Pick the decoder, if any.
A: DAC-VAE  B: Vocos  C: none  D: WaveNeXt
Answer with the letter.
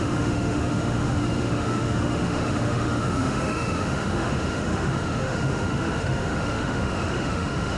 A